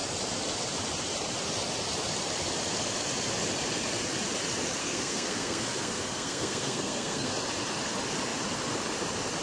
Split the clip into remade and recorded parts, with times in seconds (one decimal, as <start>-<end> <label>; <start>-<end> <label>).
0.0-4.8 recorded; 4.8-7.3 remade; 7.3-9.4 recorded